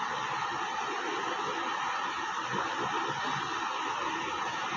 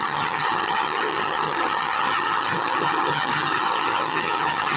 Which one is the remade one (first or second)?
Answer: second